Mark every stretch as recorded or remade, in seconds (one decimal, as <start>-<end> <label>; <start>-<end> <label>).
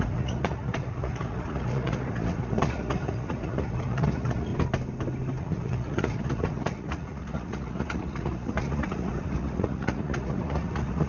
0.0-4.5 remade; 4.5-5.4 recorded; 5.4-11.1 remade